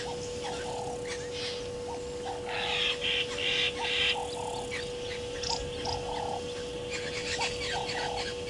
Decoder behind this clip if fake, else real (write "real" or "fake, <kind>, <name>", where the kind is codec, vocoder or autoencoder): real